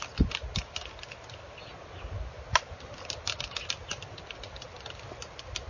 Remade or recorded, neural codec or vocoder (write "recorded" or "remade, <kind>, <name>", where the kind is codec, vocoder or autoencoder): recorded